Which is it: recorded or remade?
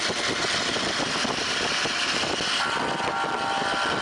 recorded